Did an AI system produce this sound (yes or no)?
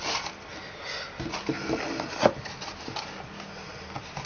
no